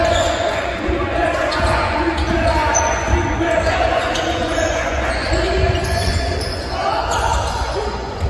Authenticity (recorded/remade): remade